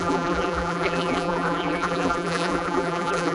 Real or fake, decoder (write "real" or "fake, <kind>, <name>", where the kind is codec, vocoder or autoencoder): fake, vocoder, BigVGAN v2